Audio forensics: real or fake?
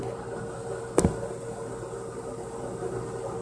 real